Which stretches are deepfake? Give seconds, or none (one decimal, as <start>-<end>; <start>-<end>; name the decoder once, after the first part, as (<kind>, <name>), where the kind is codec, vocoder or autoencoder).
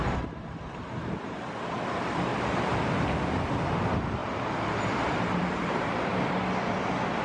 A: 2.3-3.6 (vocoder, BigVGAN v2); 4.2-6.1